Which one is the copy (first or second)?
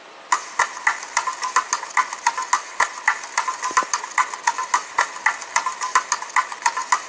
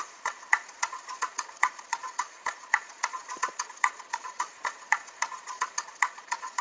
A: second